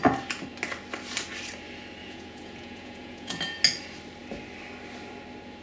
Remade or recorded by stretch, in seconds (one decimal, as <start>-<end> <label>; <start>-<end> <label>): 0.0-2.0 recorded; 2.0-3.4 remade; 3.4-5.6 recorded